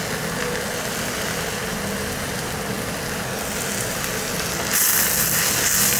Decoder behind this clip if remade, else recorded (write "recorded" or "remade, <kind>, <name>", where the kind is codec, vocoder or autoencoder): recorded